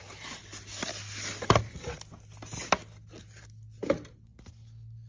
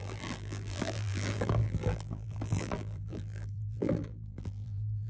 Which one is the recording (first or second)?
first